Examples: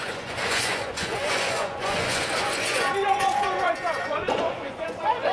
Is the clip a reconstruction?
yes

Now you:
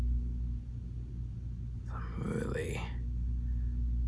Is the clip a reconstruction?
no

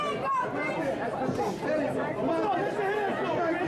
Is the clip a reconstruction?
no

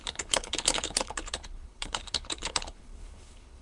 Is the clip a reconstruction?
yes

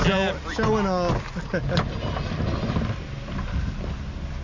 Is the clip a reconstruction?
no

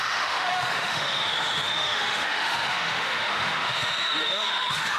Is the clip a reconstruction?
yes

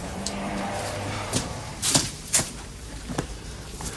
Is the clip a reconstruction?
yes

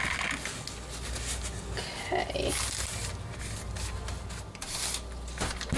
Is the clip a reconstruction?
no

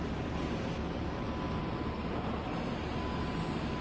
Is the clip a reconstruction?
no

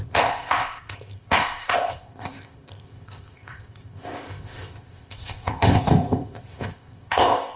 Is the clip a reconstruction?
yes